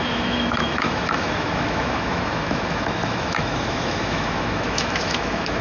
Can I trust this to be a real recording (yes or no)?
no